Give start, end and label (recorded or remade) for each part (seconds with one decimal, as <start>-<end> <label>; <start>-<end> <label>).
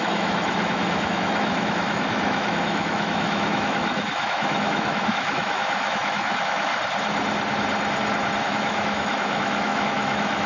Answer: 0.0-6.7 remade; 6.7-8.4 recorded; 8.4-10.5 remade